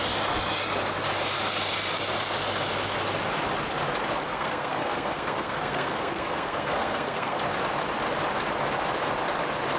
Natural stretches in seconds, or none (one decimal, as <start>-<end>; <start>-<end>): 0.0-4.3; 7.4-9.8